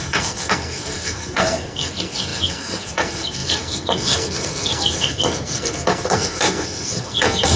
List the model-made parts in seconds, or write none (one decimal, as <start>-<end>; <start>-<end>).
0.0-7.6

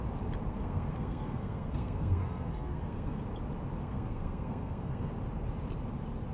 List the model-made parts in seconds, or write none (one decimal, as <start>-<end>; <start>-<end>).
0.5-3.2; 3.8-5.1

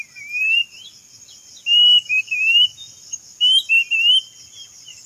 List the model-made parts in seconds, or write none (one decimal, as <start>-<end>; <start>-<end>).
none